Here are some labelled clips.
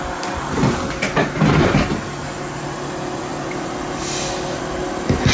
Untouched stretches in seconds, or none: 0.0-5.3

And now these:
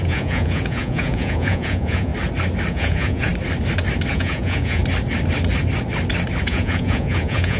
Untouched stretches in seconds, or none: 2.1-2.7; 3.3-4.1; 4.8-6.4

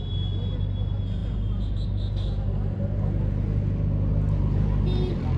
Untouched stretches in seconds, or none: 0.0-5.4

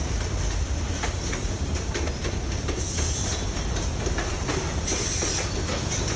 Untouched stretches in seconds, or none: 0.0-6.2

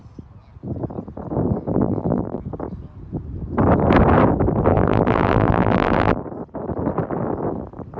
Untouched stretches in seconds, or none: 0.0-1.7; 2.4-4.7; 6.2-8.0

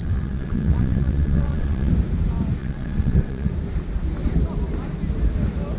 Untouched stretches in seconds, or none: 1.9-2.6; 3.5-5.8